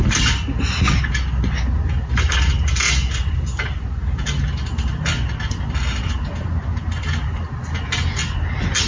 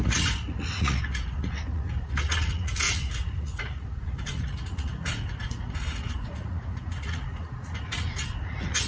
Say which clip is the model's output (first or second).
second